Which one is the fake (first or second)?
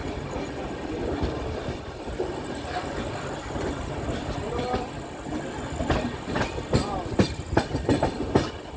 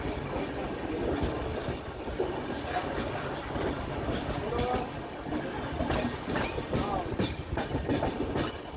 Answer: first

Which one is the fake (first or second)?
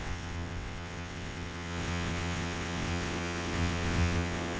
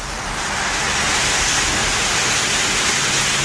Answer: first